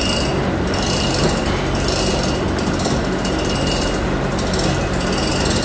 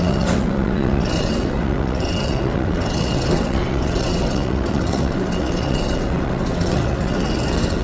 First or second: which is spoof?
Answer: second